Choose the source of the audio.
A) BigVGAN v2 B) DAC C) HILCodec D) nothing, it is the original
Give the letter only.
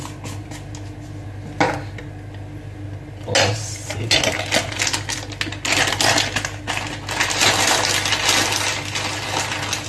D